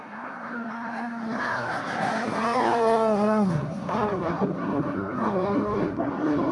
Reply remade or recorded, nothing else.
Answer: remade